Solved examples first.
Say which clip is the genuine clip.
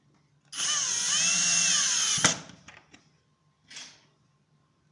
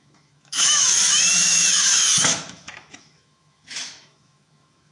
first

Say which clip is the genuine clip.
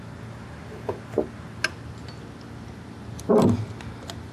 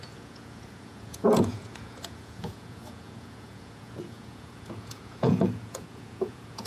first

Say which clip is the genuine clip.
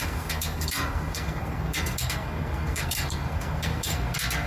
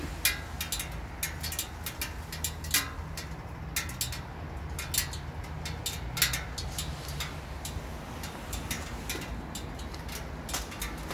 second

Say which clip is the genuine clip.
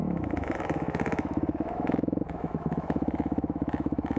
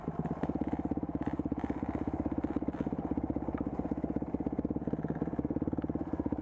second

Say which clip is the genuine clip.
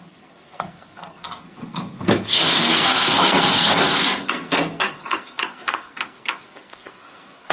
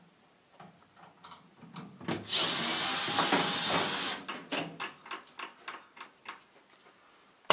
second